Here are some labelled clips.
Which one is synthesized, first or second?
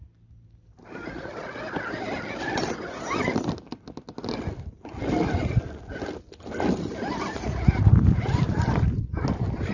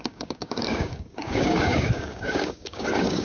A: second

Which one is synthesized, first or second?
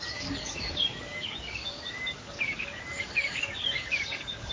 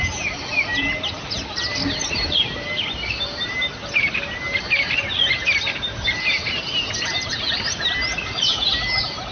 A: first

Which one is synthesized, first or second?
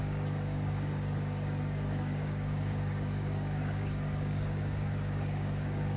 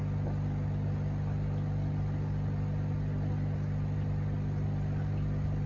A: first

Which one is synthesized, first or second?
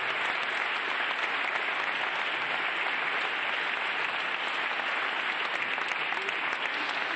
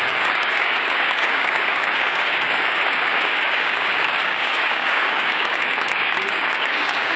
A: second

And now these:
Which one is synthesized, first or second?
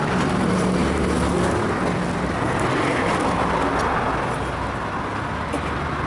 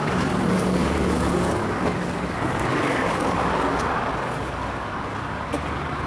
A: second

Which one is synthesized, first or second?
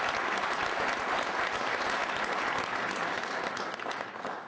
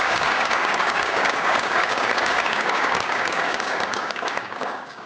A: second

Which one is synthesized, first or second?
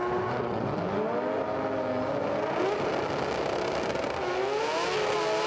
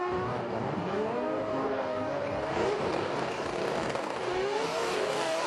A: second